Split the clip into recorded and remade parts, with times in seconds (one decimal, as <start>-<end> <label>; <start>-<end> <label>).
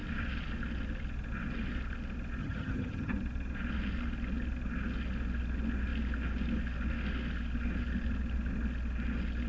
0.0-2.4 recorded; 2.4-3.1 remade; 3.1-9.5 recorded